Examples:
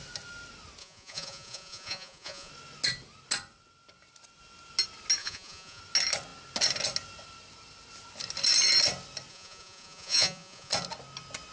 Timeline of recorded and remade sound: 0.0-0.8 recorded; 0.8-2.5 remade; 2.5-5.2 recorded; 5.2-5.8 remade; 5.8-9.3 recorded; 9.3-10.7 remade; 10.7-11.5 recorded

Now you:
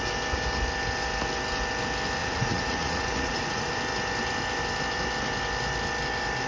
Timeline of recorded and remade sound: 0.0-2.2 recorded; 2.2-3.7 remade; 3.7-6.5 recorded

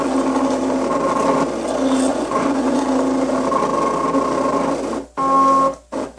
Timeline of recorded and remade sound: 0.0-2.1 recorded; 2.1-2.8 remade; 2.8-6.2 recorded

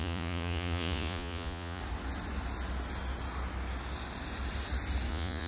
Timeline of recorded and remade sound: 0.0-1.8 remade; 1.8-5.1 recorded; 5.1-5.5 remade

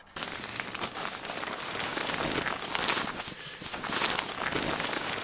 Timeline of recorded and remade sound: 0.0-5.2 recorded

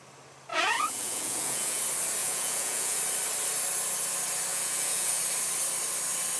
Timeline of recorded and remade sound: 0.0-0.5 recorded; 0.5-1.8 remade; 1.8-2.2 recorded; 2.2-3.0 remade; 3.0-4.5 recorded; 4.5-5.2 remade; 5.2-6.4 recorded

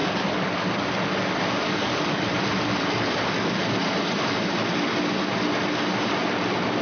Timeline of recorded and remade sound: 0.0-6.8 recorded

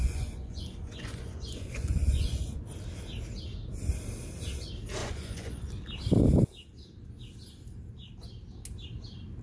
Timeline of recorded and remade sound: 0.0-2.6 remade; 2.6-5.0 recorded; 5.0-5.7 remade; 5.7-9.4 recorded